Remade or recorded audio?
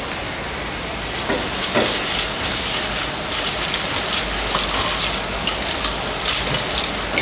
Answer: recorded